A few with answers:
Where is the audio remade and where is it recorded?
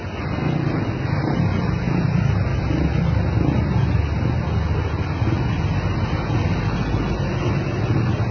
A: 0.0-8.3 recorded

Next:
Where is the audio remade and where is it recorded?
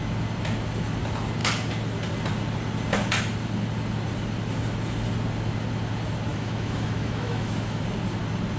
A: 0.0-6.3 recorded; 6.3-7.8 remade; 7.8-8.6 recorded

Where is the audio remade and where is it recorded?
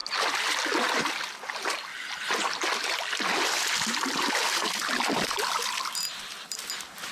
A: 0.0-7.1 recorded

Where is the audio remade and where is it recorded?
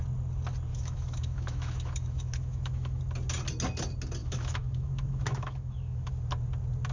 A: 0.0-0.7 recorded; 0.7-3.0 remade; 3.0-4.2 recorded; 4.2-6.1 remade; 6.1-6.9 recorded